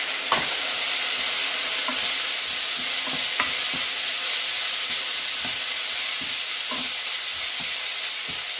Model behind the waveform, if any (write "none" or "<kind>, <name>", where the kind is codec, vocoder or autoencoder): none